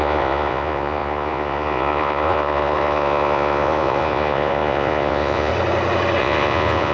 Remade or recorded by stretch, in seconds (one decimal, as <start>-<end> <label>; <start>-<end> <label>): 0.0-5.5 remade; 5.5-6.2 recorded; 6.2-6.9 remade